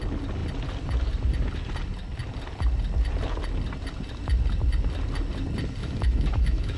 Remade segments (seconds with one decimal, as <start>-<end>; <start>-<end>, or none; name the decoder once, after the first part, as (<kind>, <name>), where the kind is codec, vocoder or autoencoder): 5.8-6.8 (autoencoder, DAC-VAE)